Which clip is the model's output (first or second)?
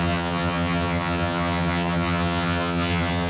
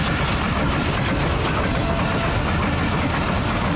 first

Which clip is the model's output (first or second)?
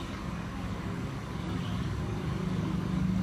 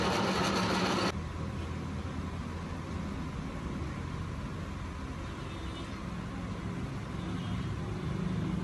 first